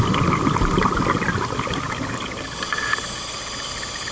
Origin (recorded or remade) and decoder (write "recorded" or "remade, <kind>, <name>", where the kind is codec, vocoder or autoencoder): recorded